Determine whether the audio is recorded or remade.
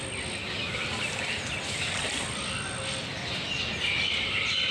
recorded